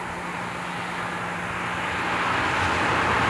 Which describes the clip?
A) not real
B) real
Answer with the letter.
B